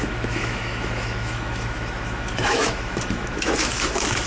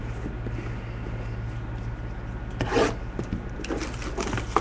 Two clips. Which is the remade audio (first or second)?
first